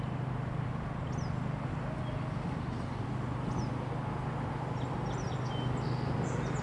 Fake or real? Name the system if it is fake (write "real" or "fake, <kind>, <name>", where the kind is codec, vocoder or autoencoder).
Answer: real